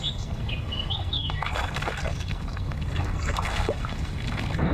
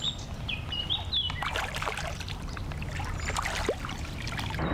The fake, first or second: first